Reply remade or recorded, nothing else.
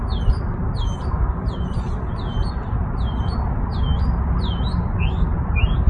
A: recorded